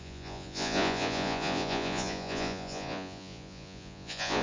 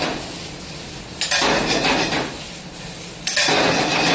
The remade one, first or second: first